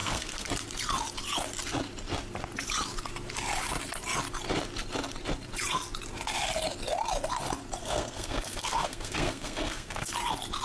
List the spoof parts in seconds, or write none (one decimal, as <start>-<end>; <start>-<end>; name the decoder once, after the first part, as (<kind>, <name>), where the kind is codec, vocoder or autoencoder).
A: 0.0-0.5 (codec, SNAC); 7.8-10.1